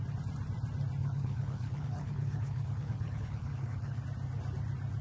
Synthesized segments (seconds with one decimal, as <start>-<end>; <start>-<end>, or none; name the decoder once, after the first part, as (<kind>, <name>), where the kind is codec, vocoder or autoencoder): 1.0-4.0 (codec, HILCodec)